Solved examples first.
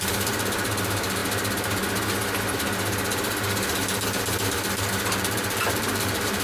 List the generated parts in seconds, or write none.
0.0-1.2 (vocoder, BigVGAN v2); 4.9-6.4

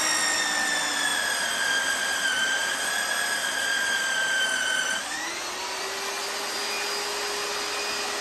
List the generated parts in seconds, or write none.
1.1-5.3 (vocoder, BigVGAN v2)

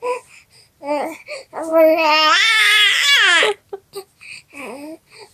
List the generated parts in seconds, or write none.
none

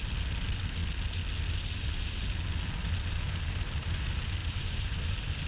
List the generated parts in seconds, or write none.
4.4-5.5 (vocoder, BigVGAN v2)